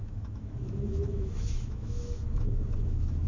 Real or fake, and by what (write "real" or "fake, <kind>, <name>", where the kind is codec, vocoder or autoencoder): fake, autoencoder, DAC-VAE